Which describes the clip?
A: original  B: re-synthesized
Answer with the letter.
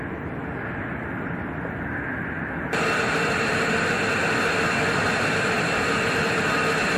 A